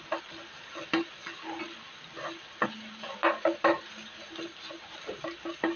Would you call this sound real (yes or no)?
yes